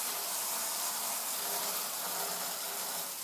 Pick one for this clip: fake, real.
real